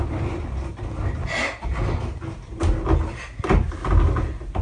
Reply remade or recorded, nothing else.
recorded